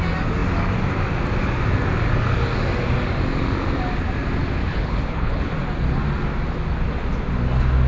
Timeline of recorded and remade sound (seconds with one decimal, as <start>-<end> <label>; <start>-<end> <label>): 0.0-4.6 recorded; 4.6-5.5 remade; 5.5-7.9 recorded